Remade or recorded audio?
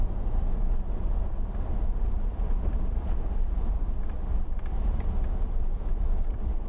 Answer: remade